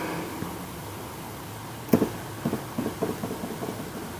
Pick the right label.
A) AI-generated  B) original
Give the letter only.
B